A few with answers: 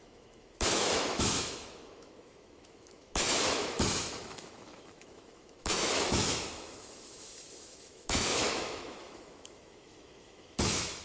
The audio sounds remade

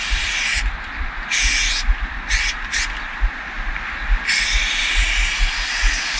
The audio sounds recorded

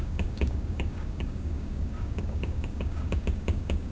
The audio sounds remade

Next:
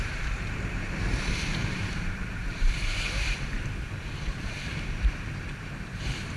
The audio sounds remade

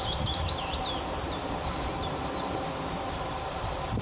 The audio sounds remade